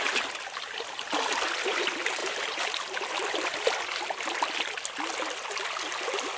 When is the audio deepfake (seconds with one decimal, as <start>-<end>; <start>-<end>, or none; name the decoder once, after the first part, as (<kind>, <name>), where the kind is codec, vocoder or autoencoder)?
none